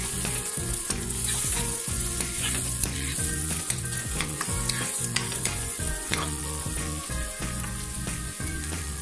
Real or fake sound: fake